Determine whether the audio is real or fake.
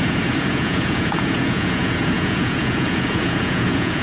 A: fake